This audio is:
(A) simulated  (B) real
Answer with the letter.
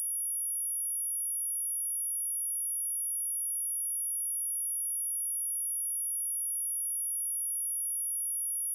B